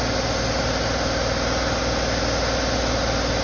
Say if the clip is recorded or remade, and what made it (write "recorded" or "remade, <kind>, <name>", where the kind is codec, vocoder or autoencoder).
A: recorded